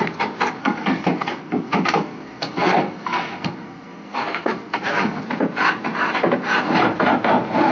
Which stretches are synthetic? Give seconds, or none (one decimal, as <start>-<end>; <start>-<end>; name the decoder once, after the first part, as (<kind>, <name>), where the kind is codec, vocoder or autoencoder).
0.6-5.2 (codec, SNAC)